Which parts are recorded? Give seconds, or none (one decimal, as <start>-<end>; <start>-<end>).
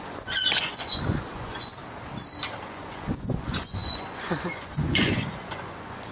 1.8-2.7